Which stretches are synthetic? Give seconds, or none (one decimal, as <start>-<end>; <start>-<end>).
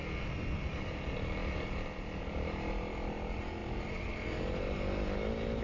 none